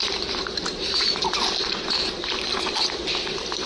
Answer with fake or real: fake